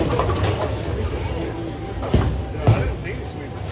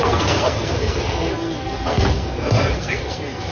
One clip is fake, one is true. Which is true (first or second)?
first